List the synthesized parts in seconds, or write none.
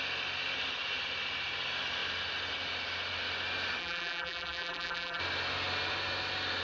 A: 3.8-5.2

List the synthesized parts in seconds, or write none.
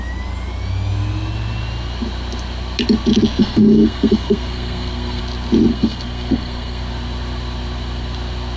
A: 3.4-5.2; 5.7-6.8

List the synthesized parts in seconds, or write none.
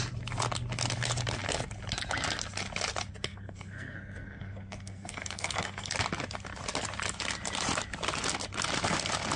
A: 3.3-5.9